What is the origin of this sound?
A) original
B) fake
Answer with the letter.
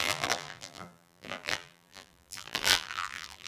B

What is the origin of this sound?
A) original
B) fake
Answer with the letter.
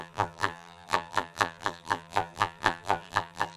B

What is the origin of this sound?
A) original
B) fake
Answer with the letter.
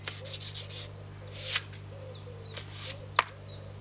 A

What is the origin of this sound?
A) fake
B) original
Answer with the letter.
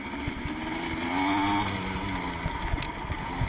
B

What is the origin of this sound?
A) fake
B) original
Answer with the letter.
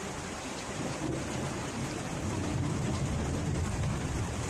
A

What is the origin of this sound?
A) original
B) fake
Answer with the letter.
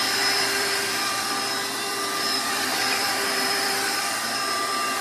B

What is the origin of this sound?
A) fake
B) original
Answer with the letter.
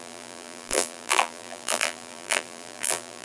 A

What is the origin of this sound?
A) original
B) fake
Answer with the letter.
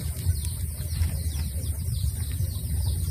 B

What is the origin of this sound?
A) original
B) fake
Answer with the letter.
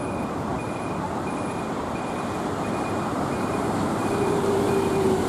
B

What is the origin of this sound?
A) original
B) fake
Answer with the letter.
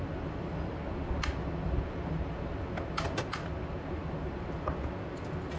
B